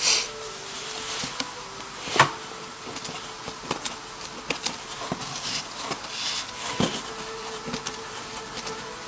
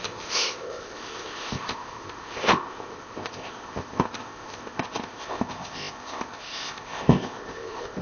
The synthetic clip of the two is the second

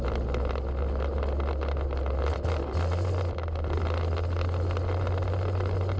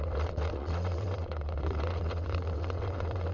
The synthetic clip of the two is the second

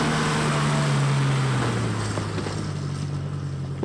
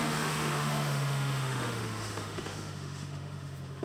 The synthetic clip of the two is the second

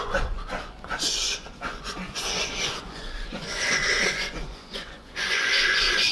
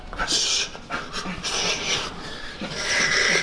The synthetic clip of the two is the first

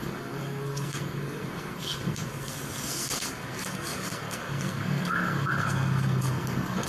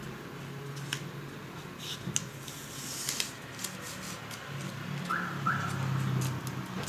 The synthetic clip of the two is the first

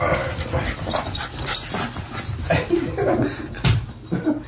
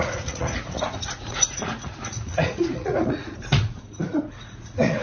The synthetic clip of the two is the second